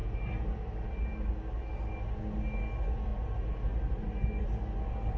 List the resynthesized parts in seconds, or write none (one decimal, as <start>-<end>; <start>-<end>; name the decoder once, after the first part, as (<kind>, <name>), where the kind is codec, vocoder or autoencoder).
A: none